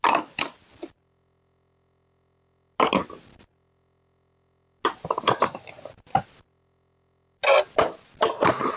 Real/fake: real